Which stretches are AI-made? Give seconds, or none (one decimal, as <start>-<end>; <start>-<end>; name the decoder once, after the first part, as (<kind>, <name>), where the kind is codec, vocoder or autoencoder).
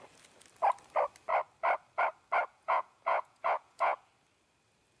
2.5-4.1 (vocoder, Vocos)